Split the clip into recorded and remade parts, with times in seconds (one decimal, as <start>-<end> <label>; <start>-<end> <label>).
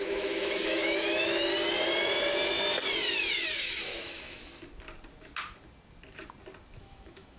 0.0-1.5 remade; 1.5-3.3 recorded; 3.3-4.5 remade; 4.5-6.8 recorded; 6.8-7.4 remade